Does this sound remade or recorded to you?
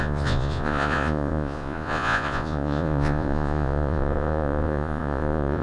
remade